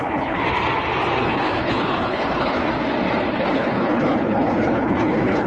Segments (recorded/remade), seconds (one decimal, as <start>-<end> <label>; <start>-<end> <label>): 0.0-0.4 remade; 0.4-1.2 recorded; 1.2-2.6 remade; 2.6-3.3 recorded; 3.3-5.5 remade